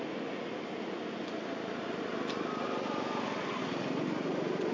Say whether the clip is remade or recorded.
recorded